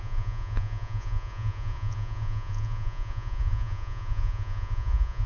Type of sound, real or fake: fake